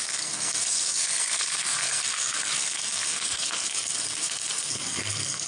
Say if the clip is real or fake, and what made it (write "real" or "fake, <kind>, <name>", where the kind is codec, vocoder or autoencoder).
fake, codec, SNAC